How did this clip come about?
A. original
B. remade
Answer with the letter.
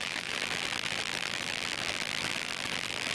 B